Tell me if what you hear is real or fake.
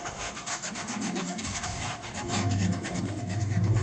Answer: fake